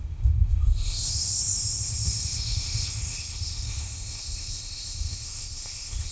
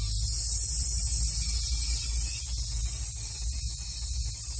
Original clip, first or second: second